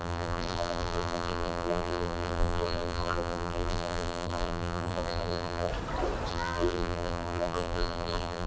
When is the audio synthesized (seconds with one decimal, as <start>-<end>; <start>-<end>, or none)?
0.0-5.7; 6.3-8.5